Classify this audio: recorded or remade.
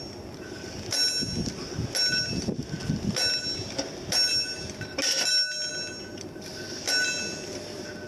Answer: recorded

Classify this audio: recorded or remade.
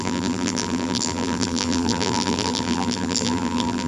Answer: remade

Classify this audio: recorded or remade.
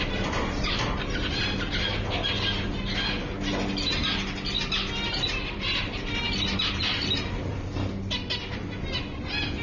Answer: recorded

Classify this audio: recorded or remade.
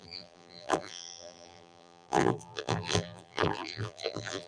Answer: remade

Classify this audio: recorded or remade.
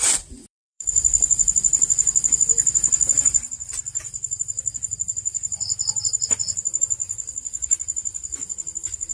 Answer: remade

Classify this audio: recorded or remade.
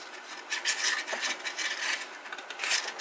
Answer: recorded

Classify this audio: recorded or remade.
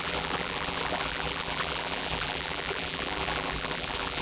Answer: remade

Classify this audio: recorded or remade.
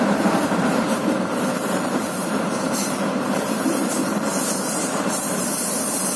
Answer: remade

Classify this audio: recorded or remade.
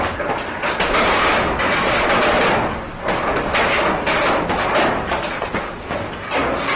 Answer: recorded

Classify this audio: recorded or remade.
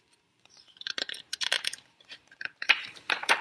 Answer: remade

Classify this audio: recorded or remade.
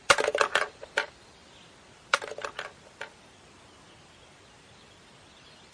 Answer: remade